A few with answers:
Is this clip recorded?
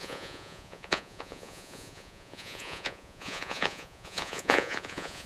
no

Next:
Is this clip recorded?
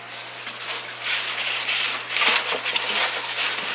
yes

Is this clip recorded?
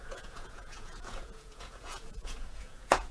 no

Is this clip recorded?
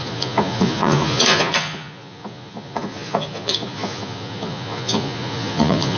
no